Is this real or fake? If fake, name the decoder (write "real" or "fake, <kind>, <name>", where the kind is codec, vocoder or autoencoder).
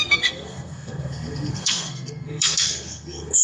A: fake, codec, SNAC